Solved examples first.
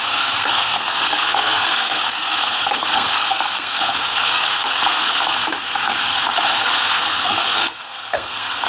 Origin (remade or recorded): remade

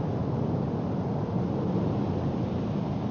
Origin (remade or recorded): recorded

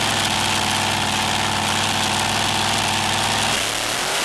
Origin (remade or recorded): recorded